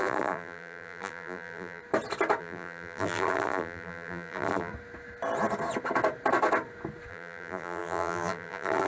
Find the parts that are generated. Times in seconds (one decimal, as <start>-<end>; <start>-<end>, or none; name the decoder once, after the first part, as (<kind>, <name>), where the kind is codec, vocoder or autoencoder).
0.0-1.8 (vocoder, BigVGAN v2); 2.4-4.7; 7.1-8.9